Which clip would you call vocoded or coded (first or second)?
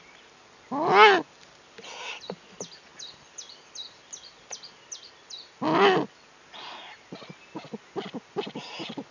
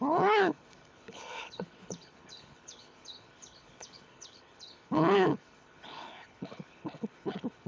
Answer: second